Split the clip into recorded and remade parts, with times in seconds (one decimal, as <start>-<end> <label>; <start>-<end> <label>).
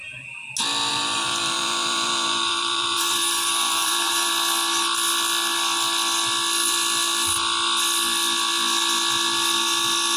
0.0-0.9 recorded; 0.9-4.3 remade; 4.3-10.2 recorded